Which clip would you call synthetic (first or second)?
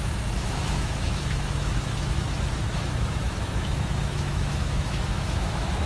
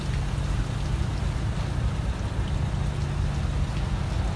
first